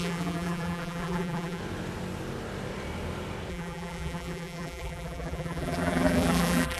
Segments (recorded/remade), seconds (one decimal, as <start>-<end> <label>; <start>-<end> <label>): 0.0-1.6 remade; 1.6-3.5 recorded; 3.5-6.8 remade